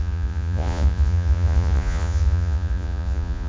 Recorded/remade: remade